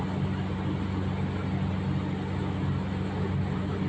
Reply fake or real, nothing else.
real